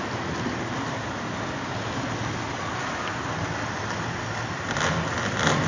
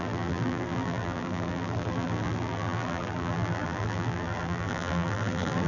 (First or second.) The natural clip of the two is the first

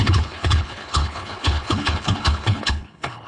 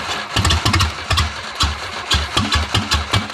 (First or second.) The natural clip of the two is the second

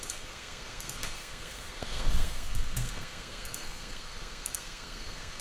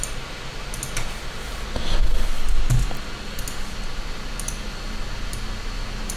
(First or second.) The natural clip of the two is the second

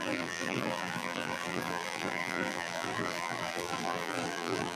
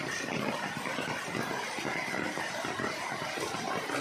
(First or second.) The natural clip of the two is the second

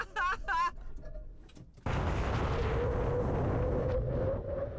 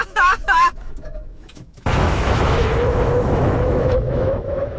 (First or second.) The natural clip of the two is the first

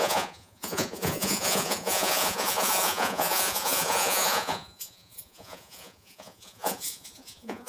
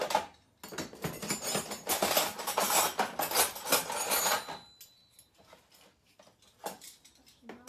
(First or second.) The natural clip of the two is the second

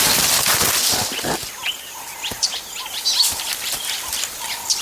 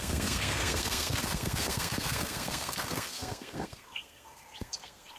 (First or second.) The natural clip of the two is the first